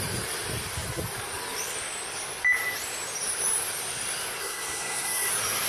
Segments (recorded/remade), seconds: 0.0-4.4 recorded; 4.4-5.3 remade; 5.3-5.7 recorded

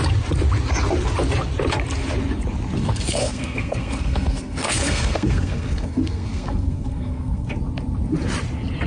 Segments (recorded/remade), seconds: 0.0-2.8 recorded; 2.8-7.5 remade; 7.5-8.9 recorded

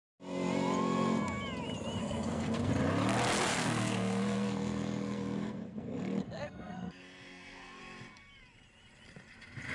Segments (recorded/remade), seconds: 0.0-2.0 recorded; 2.0-2.7 remade; 2.7-3.5 recorded; 3.5-7.8 remade; 7.8-9.7 recorded

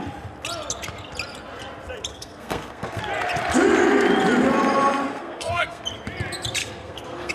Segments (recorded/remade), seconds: 0.0-2.1 recorded; 2.1-3.0 remade; 3.0-5.1 recorded; 5.1-5.8 remade; 5.8-6.6 recorded; 6.6-7.3 remade

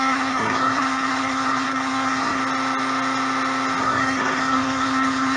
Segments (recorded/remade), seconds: 0.0-2.4 remade; 2.4-3.8 recorded; 3.8-5.4 remade

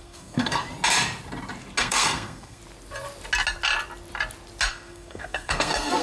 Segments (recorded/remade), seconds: 0.0-0.6 remade; 0.6-1.8 recorded; 1.8-2.6 remade; 2.6-4.7 recorded; 4.7-6.0 remade